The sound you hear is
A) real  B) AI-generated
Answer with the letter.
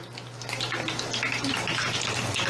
A